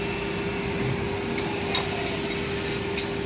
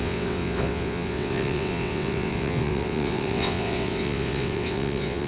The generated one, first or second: second